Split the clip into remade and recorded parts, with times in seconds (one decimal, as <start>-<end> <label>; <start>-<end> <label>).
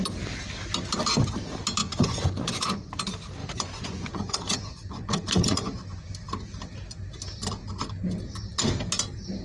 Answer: 0.0-1.8 recorded; 1.8-2.9 remade; 2.9-3.4 recorded; 3.4-6.0 remade; 6.0-9.4 recorded